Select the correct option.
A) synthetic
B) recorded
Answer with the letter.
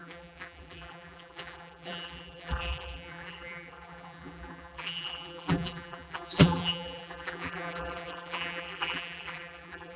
A